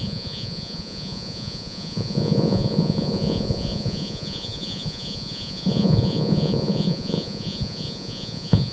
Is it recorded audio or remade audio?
remade